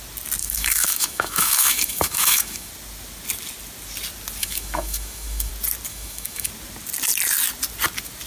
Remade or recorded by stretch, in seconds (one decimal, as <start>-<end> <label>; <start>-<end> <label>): 0.0-0.4 recorded; 0.4-2.7 remade; 2.7-4.4 recorded; 4.4-5.5 remade; 5.5-5.9 recorded; 5.9-6.5 remade; 6.5-8.3 recorded